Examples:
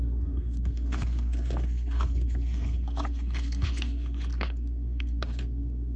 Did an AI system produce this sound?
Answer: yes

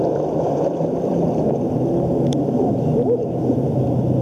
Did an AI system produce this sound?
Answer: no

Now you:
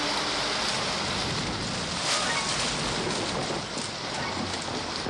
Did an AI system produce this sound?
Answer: no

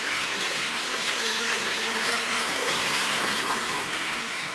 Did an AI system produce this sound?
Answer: yes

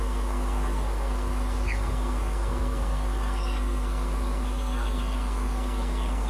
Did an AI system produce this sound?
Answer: yes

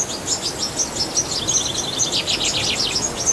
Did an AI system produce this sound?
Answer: no